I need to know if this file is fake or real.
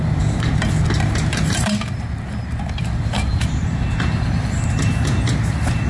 fake